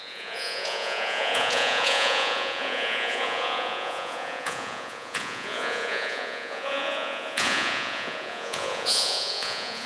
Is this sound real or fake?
fake